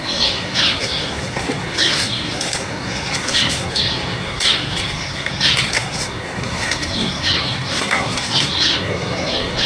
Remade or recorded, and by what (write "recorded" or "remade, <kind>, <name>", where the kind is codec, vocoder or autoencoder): remade, codec, SNAC